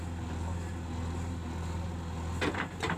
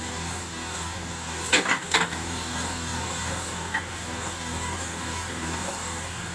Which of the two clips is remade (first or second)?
second